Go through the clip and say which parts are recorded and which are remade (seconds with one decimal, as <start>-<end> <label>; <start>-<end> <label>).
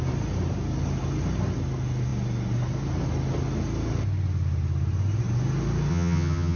0.0-5.9 recorded; 5.9-6.6 remade